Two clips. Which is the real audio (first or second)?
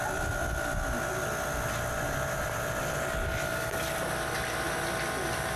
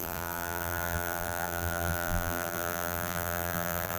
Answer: first